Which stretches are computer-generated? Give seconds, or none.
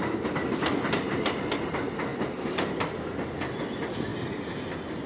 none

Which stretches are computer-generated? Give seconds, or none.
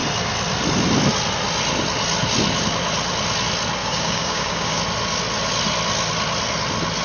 3.8-4.8 (codec, DAC)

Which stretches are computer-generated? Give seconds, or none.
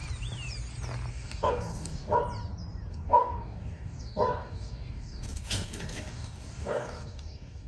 1.1-2.2 (codec, DAC); 2.9-7.7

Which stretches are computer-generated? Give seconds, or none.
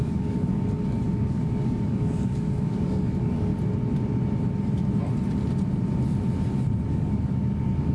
0.0-3.5 (codec, DAC); 6.9-7.9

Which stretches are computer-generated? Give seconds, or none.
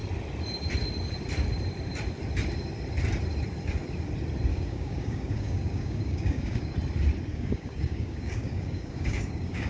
4.5-6.7 (codec, DAC); 7.3-9.7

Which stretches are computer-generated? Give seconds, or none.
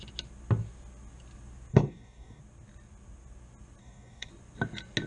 1.7-2.4 (codec, DAC); 3.8-4.3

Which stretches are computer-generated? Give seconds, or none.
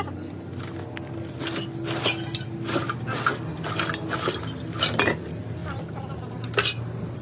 none